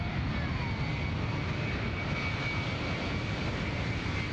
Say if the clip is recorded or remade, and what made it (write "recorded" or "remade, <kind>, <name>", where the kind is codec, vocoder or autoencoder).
recorded